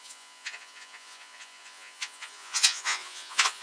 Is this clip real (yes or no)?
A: no